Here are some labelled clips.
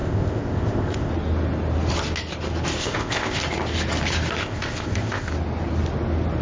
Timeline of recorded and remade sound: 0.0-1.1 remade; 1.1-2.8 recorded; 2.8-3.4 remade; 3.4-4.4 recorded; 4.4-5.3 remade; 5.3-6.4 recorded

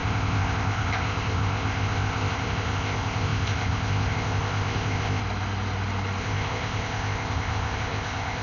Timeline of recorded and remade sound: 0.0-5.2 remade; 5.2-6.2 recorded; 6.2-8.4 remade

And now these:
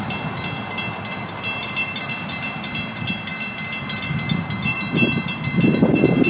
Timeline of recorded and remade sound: 0.0-6.3 recorded

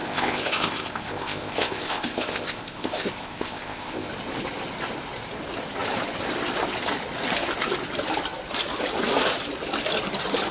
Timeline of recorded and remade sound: 0.0-4.1 remade; 4.1-10.5 recorded

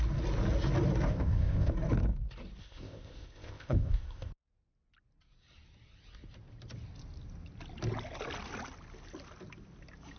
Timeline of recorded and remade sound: 0.0-1.1 recorded; 1.1-1.7 remade; 1.7-2.6 recorded; 2.6-4.3 remade; 4.3-10.2 recorded

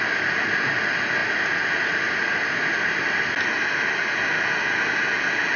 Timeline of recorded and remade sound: 0.0-5.6 recorded

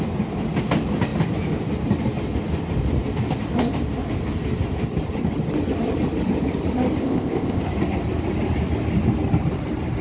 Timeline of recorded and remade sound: 0.0-7.0 recorded; 7.0-7.6 remade; 7.6-10.0 recorded

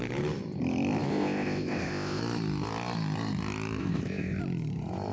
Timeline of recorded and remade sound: 0.0-1.1 recorded; 1.1-2.2 remade; 2.2-3.8 recorded; 3.8-4.4 remade; 4.4-5.1 recorded